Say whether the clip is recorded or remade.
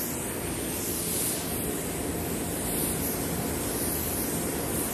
recorded